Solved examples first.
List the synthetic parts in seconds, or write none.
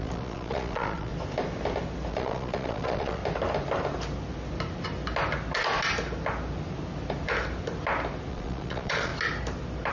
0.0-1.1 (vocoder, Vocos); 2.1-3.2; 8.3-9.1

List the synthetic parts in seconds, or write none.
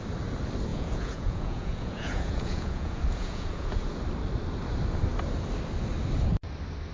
0.7-4.0 (vocoder, Vocos)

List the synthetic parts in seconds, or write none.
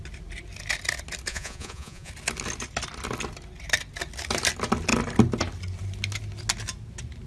1.3-2.1 (vocoder, Vocos)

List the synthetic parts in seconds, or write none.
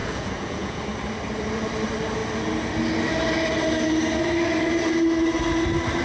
0.0-0.8 (vocoder, Vocos)